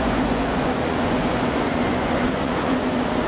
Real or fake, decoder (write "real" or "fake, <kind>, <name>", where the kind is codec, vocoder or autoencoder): fake, vocoder, Vocos